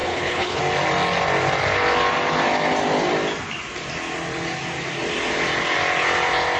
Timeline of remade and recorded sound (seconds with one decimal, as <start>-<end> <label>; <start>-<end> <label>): 0.0-0.6 remade; 0.6-6.6 recorded